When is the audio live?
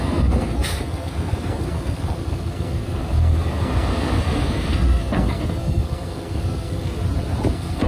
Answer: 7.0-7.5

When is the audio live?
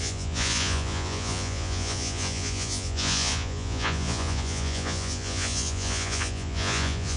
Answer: none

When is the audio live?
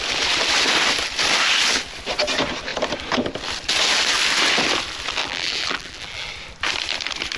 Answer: 0.0-5.2; 6.3-7.4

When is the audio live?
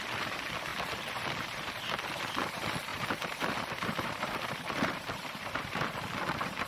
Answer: 0.0-0.7; 1.7-2.9; 5.9-6.7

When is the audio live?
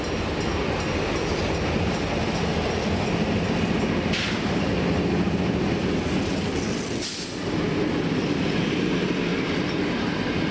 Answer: 0.0-10.5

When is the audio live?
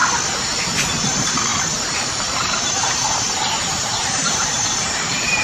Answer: 0.0-1.0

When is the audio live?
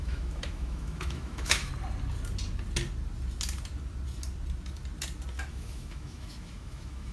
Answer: 1.7-5.5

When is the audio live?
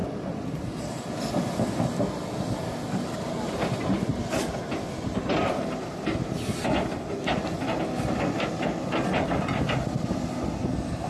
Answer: none